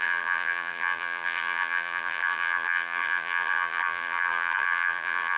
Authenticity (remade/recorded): remade